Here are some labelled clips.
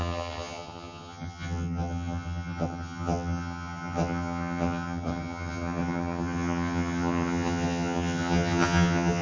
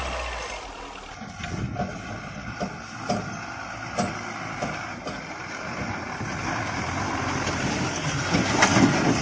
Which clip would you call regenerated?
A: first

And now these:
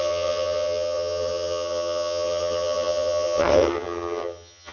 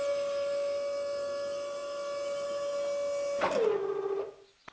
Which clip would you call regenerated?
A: first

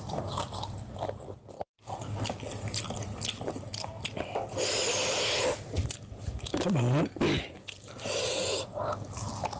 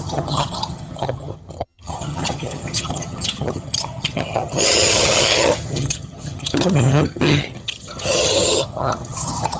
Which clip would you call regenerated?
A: second